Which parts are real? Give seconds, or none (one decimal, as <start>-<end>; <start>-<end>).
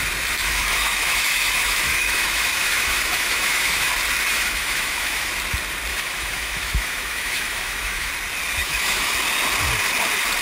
0.0-0.4; 3.9-4.3; 5.3-5.9; 8.1-8.6; 9.1-10.4